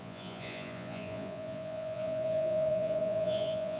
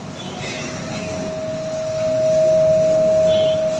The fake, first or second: first